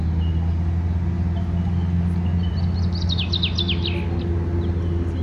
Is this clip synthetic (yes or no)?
no